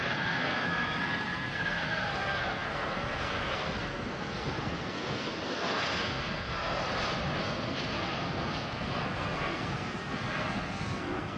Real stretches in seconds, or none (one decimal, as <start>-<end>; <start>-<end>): 6.8-7.4